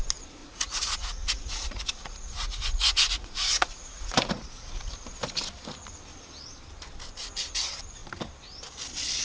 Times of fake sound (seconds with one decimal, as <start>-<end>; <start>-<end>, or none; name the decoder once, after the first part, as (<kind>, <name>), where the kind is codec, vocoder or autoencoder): 0.4-4.7 (vocoder, Vocos)